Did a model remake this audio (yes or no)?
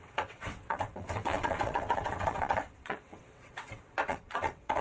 yes